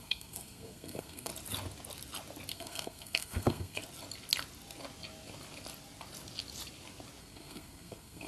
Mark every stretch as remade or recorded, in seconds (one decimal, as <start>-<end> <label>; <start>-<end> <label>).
0.0-1.3 remade; 1.3-2.5 recorded; 2.5-3.8 remade; 3.8-7.2 recorded; 7.2-8.3 remade